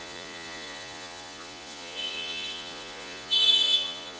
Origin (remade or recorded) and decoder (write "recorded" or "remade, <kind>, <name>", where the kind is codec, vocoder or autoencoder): remade, vocoder, Vocos